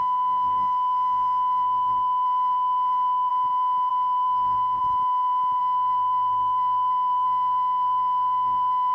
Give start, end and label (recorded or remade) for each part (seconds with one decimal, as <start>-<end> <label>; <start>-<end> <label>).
0.0-3.3 remade; 3.3-3.9 recorded; 3.9-4.8 remade; 4.8-5.6 recorded; 5.6-8.9 remade